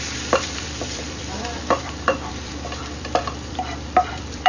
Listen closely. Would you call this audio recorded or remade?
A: remade